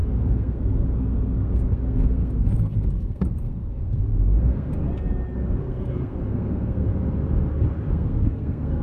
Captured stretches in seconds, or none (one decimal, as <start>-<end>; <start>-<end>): 4.8-5.6; 6.9-7.9